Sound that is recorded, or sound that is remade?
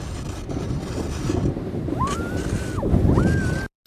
recorded